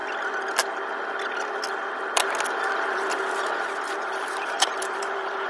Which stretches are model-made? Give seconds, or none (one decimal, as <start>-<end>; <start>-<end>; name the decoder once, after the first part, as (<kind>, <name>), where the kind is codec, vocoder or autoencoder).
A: 2.9-5.5 (vocoder, BigVGAN v2)